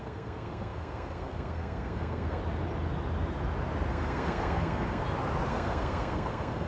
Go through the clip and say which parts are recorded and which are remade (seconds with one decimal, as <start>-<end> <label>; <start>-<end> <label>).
0.0-2.4 remade; 2.4-3.9 recorded; 3.9-5.0 remade; 5.0-5.5 recorded; 5.5-6.7 remade